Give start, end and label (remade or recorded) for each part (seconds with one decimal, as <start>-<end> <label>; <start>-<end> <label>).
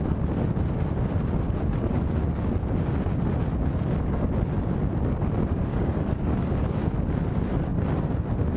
0.0-5.7 recorded; 5.7-6.9 remade; 6.9-8.6 recorded